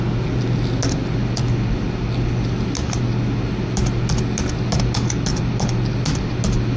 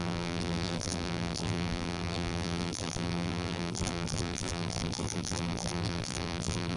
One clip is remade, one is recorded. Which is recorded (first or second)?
first